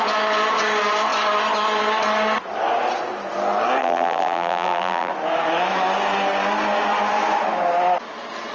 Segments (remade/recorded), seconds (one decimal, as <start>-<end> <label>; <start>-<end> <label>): 0.0-3.8 recorded; 3.8-5.1 remade; 5.1-8.5 recorded